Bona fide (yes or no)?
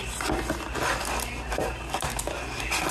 yes